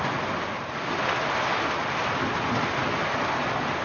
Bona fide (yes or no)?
yes